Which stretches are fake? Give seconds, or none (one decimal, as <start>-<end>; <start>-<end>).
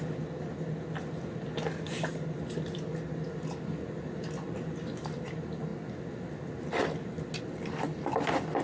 none